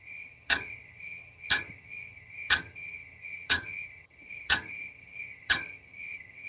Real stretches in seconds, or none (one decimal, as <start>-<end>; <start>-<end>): none